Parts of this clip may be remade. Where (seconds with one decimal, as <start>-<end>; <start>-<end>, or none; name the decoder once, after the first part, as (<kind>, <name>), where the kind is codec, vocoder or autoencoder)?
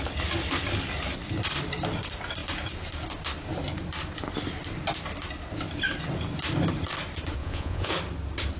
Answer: 7.4-7.9 (vocoder, Vocos)